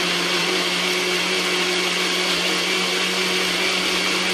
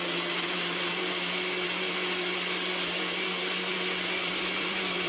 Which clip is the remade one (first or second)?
second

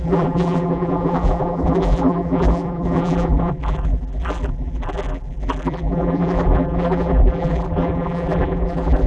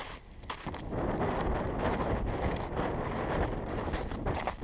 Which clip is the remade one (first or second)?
first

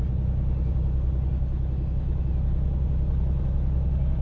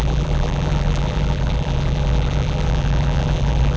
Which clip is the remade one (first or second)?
second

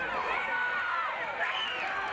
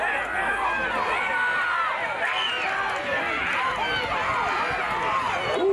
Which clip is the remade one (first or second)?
first